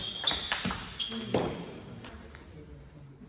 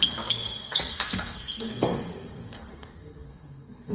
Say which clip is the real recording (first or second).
first